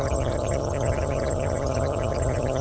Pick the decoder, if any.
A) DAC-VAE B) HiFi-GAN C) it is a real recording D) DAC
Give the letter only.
B